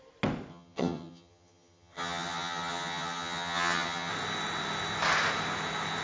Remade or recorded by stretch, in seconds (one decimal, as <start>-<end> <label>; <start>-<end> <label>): 0.0-0.5 recorded; 0.5-4.1 remade; 4.1-6.0 recorded